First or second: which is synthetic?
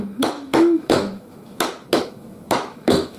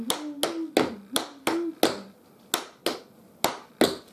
first